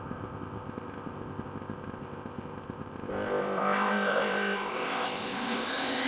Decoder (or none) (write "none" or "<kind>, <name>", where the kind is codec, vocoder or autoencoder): codec, ZipCodec